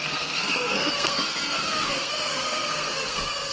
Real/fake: fake